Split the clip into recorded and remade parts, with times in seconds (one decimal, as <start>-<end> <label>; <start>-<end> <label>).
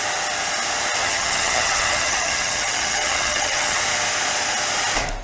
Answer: 0.0-1.0 recorded; 1.0-3.8 remade; 3.8-5.2 recorded